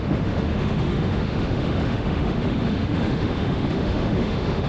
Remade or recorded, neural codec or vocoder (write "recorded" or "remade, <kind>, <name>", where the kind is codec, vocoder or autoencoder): remade, autoencoder, DAC-VAE